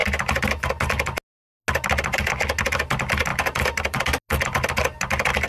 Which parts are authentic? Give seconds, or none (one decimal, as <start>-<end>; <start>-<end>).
0.7-3.3; 4.0-5.5